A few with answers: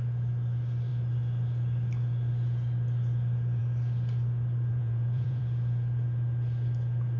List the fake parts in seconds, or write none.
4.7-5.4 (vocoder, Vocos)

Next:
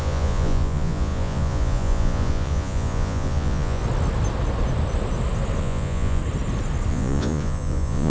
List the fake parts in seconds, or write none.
0.0-3.8 (vocoder, Vocos); 5.6-6.2; 6.9-8.1

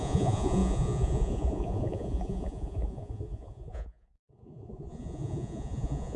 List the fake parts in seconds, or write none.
0.0-6.2 (vocoder, Vocos)

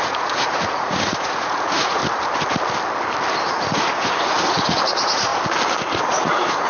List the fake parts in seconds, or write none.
0.0-2.0 (vocoder, Vocos); 3.4-5.3; 6.0-6.7

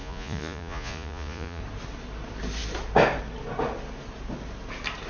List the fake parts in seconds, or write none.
0.0-1.6 (vocoder, Vocos)